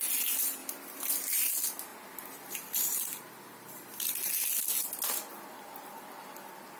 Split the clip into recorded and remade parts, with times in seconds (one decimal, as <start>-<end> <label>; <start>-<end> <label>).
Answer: 0.0-0.6 recorded; 0.6-1.5 remade; 1.5-1.9 recorded; 1.9-4.3 remade; 4.3-6.8 recorded

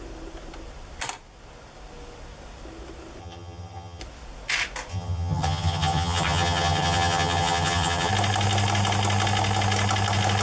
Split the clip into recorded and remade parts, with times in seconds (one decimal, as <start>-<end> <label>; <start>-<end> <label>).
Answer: 0.0-3.2 recorded; 3.2-4.0 remade; 4.0-4.9 recorded; 4.9-8.1 remade; 8.1-10.4 recorded